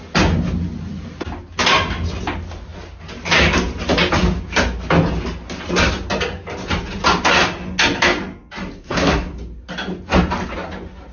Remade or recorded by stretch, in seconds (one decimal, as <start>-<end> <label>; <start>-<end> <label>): 0.0-8.8 recorded; 8.8-9.3 remade; 9.3-11.1 recorded